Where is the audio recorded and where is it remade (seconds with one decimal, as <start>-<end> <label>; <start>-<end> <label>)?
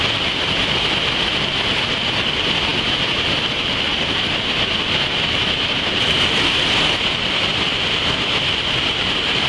0.0-9.5 recorded